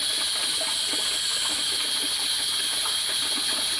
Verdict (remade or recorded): recorded